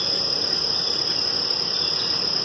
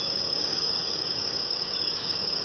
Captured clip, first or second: first